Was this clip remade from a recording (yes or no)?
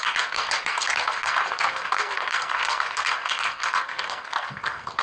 yes